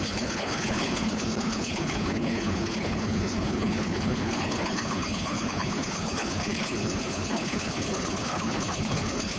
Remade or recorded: remade